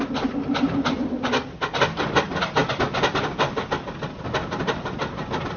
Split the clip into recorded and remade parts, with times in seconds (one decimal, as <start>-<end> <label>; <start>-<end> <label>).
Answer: 0.0-5.6 recorded